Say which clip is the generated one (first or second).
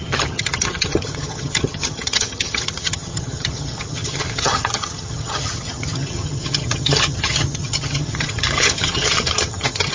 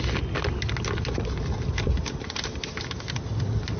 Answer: first